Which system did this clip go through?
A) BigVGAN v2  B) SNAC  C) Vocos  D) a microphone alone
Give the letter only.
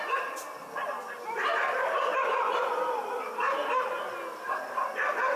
D